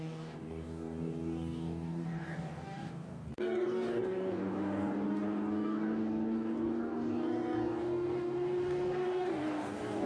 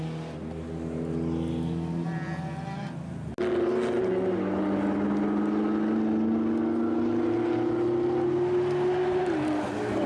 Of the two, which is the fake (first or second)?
first